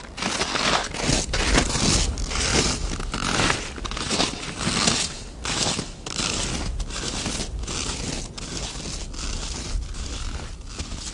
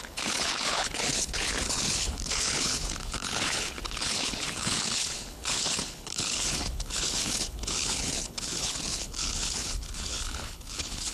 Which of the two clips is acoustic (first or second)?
first